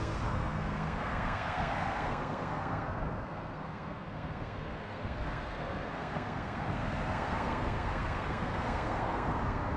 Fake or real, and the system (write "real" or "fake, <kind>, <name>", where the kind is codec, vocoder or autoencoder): fake, codec, SNAC